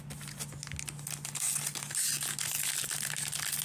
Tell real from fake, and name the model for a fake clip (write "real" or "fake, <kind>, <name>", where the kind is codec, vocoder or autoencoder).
real